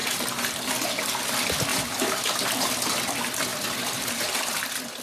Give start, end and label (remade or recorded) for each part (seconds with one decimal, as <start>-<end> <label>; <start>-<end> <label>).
0.0-0.7 remade; 0.7-1.7 recorded; 1.7-2.7 remade; 2.7-3.5 recorded; 3.5-4.6 remade; 4.6-5.0 recorded

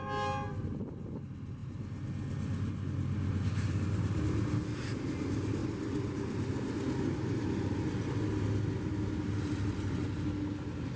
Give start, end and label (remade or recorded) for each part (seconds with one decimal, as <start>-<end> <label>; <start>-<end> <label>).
0.0-5.6 recorded; 5.6-8.2 remade; 8.2-11.0 recorded